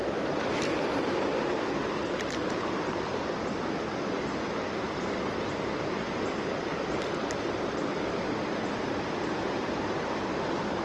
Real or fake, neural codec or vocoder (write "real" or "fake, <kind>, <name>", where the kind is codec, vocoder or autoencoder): real